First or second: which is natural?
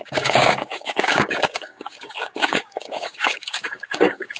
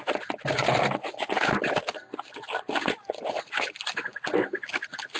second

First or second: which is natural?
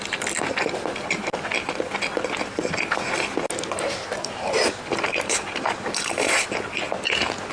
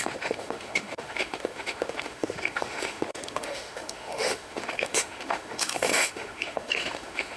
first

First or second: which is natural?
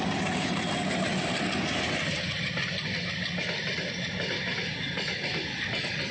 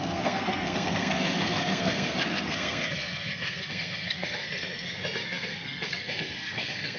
first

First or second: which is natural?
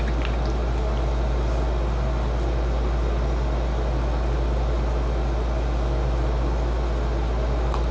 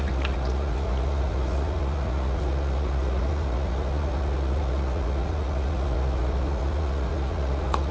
first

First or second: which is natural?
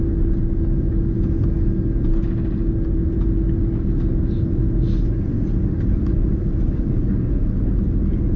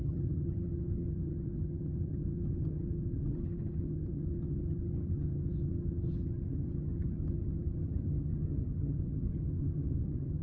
first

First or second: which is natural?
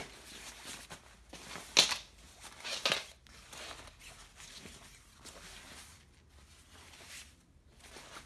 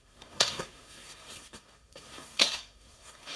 first